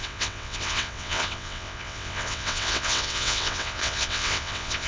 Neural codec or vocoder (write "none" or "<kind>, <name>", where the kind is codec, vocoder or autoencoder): vocoder, WaveNeXt